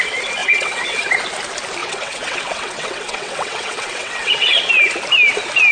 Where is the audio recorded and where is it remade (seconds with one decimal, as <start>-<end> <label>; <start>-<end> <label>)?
0.0-0.4 recorded; 0.4-1.1 remade; 1.1-1.8 recorded; 1.8-4.7 remade; 4.7-5.7 recorded